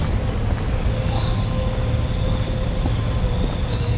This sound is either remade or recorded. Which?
recorded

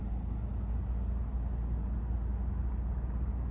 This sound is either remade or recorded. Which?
recorded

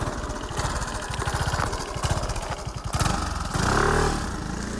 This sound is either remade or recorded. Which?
recorded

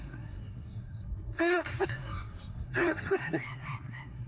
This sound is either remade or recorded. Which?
remade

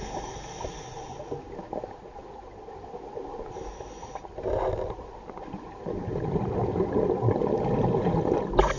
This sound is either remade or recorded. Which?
recorded